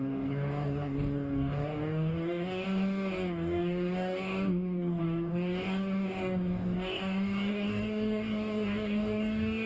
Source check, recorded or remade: remade